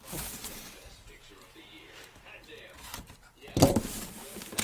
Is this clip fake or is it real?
real